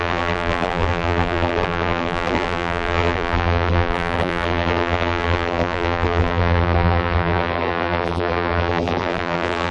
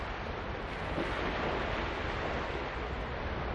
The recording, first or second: second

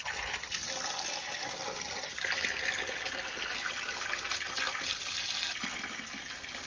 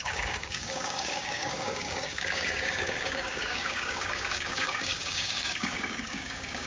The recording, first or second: first